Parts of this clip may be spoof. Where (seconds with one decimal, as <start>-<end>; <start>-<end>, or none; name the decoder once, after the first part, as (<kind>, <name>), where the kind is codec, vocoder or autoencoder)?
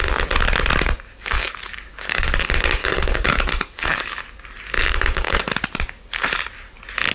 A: 1.4-2.4 (codec, DAC); 2.8-4.2; 4.8-5.5